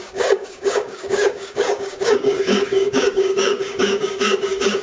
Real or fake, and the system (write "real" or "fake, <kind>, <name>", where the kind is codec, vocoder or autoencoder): fake, codec, DAC